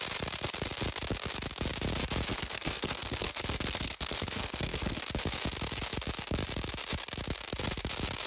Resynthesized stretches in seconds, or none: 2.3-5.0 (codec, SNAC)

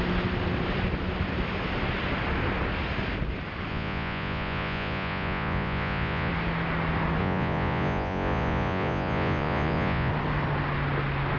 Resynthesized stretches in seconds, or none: 3.7-6.3 (vocoder, Vocos); 7.2-10.1

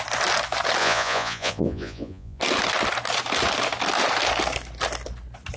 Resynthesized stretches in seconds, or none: 0.8-2.4 (vocoder, Vocos)

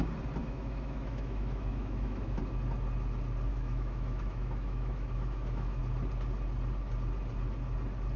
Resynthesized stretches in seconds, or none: 0.4-2.4 (autoencoder, DAC-VAE); 3.5-5.8

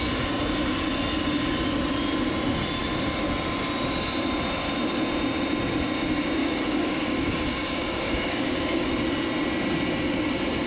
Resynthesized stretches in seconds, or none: 6.4-8.9 (codec, DAC)

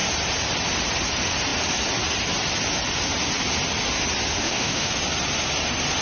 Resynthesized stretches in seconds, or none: 4.4-4.9 (autoencoder, DAC-VAE)